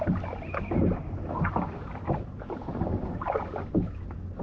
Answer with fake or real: real